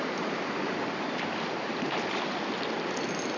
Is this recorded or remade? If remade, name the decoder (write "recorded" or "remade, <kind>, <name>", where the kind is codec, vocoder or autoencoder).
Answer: recorded